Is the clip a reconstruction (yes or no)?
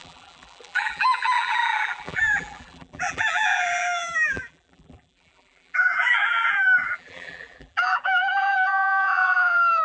yes